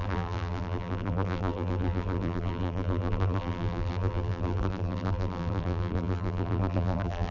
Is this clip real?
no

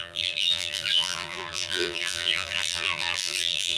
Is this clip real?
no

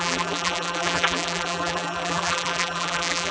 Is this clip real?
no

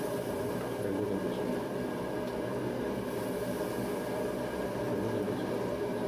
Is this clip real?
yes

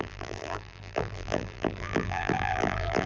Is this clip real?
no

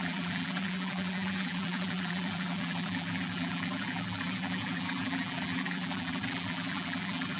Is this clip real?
no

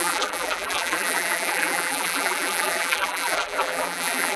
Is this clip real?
no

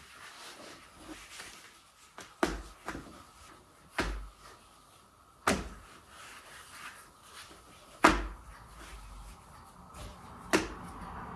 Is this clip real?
yes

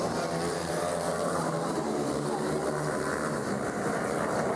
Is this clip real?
no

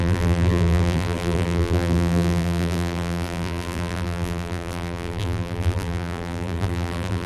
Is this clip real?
no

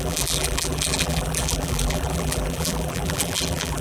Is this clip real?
no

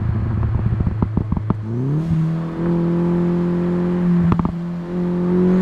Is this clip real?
yes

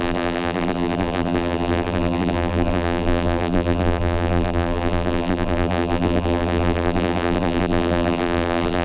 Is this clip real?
no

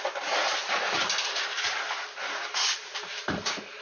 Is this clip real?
no